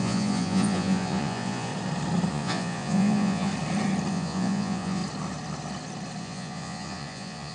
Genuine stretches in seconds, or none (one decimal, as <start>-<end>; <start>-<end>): 1.7-2.3; 3.5-4.1; 5.0-6.2